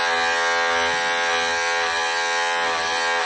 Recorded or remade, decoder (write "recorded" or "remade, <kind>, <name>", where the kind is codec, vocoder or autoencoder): recorded